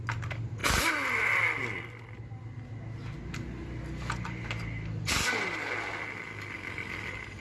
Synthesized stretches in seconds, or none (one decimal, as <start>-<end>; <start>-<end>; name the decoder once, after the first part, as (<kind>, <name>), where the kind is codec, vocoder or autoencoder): none